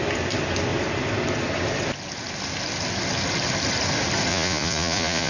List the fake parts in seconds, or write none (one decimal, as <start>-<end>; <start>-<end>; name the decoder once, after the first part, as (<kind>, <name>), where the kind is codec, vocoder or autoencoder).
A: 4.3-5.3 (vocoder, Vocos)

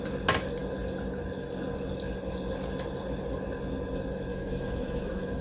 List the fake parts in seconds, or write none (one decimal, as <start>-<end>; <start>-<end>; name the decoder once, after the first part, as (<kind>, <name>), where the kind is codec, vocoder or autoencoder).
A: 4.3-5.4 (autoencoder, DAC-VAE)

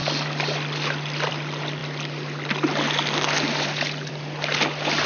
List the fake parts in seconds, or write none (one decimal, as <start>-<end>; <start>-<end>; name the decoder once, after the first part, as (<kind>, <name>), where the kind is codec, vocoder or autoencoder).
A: none